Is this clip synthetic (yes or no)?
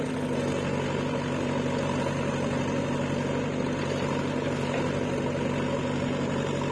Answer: no